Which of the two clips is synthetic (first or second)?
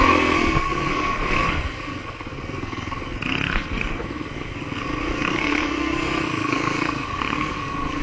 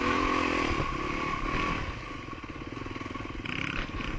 first